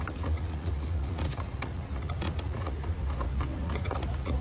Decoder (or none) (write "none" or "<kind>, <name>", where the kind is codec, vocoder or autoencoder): vocoder, Vocos